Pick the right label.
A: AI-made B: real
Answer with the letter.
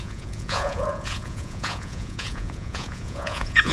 A